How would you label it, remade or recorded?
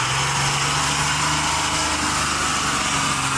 recorded